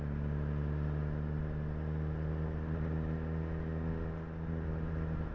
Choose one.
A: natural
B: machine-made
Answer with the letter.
A